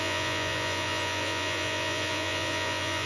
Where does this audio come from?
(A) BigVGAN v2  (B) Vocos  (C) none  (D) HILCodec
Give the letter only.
B